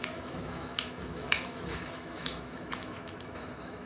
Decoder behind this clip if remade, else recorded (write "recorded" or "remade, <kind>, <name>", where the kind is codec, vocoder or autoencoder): remade, autoencoder, DAC-VAE